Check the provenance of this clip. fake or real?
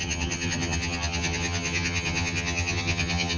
fake